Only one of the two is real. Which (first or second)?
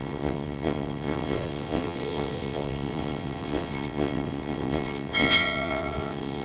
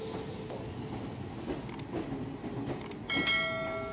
second